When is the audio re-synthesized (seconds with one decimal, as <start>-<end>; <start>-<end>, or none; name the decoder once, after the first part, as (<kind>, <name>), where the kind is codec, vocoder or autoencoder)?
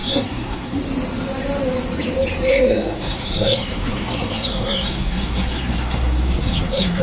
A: 0.0-0.8 (codec, SNAC); 2.5-7.0